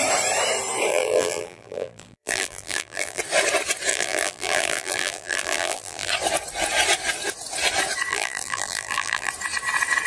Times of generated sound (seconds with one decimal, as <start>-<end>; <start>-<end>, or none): 0.9-3.2; 3.9-6.1; 8.1-9.3